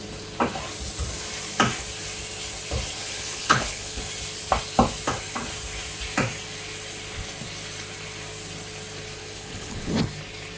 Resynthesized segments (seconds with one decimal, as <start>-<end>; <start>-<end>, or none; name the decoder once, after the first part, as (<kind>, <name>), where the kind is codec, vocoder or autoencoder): 3.0-4.0 (codec, HILCodec); 9.2-9.9